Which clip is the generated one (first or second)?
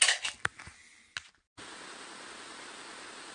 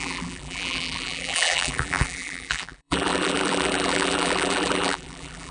second